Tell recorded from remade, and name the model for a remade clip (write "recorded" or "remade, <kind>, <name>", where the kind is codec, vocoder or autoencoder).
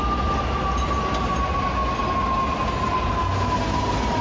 recorded